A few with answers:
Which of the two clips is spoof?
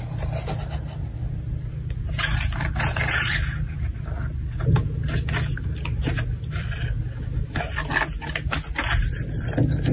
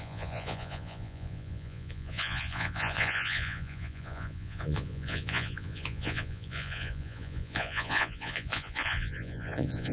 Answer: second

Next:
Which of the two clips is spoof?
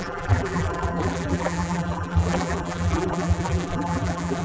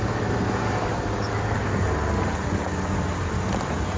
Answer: first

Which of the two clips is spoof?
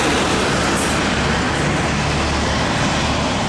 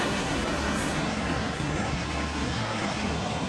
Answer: second